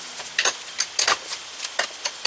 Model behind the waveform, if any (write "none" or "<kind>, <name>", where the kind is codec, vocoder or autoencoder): none